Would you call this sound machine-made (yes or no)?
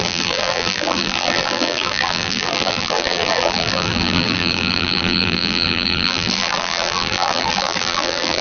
yes